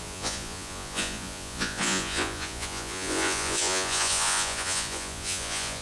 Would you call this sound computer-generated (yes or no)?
yes